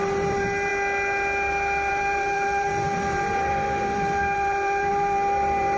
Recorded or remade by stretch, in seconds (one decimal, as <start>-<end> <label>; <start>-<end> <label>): 0.0-0.7 remade; 0.7-1.9 recorded; 1.9-5.8 remade